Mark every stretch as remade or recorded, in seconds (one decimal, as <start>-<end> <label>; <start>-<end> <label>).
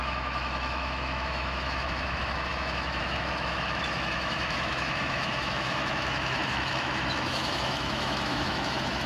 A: 0.0-9.1 remade